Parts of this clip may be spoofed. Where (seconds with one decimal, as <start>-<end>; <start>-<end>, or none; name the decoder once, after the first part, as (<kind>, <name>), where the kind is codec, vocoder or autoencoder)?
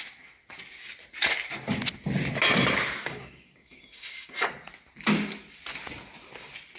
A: 3.0-4.5 (codec, DAC)